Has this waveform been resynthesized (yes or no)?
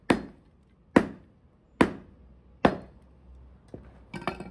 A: no